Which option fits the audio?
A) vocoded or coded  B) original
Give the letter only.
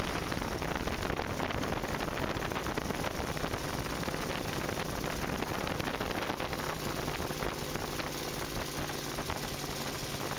B